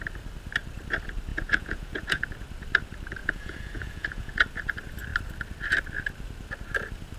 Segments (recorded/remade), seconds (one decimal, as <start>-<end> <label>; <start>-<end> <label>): 0.0-1.3 recorded; 1.3-2.2 remade; 2.2-3.2 recorded; 3.2-4.3 remade; 4.3-7.2 recorded